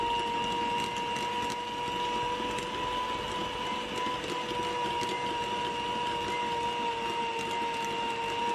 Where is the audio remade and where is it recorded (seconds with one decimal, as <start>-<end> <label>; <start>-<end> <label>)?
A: 0.0-8.5 recorded